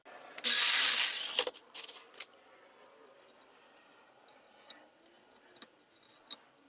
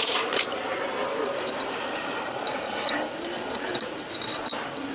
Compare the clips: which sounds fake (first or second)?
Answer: second